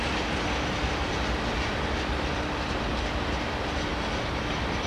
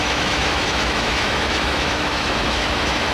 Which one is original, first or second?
first